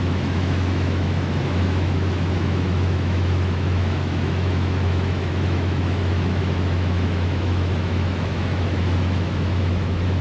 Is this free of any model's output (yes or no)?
no